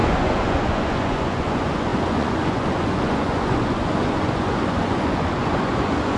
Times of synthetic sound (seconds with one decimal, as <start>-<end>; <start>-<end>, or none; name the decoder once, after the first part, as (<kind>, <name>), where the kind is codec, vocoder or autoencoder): 0.0-6.2 (vocoder, Vocos)